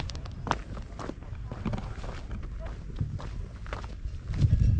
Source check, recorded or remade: recorded